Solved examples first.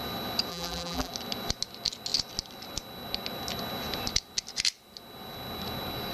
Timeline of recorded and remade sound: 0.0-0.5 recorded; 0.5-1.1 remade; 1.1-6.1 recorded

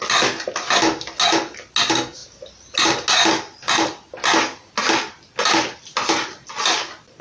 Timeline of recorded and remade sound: 0.0-7.2 recorded

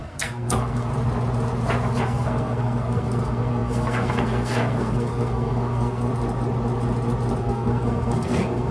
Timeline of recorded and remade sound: 0.0-0.9 remade; 0.9-2.0 recorded; 2.0-6.1 remade; 6.1-7.4 recorded; 7.4-8.7 remade